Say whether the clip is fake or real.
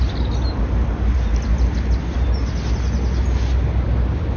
real